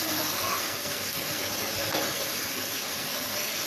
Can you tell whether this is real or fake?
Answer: fake